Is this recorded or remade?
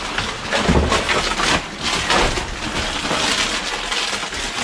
recorded